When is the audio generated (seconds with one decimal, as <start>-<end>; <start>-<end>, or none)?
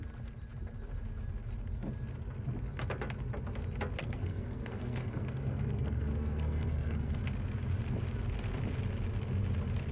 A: 4.0-7.2